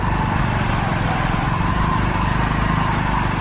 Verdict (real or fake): real